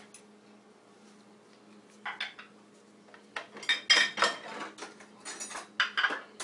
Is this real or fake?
real